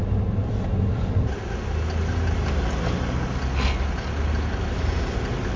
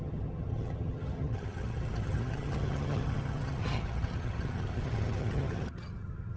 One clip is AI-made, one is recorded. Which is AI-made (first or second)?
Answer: second